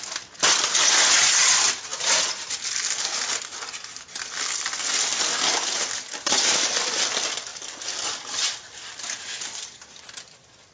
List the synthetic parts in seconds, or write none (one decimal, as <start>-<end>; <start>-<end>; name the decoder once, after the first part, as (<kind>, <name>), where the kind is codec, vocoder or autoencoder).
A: 5.3-7.0 (vocoder, BigVGAN v2); 7.5-10.7